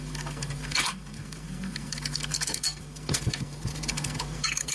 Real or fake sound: fake